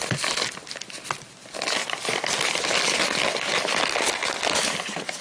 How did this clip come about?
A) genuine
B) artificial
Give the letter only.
A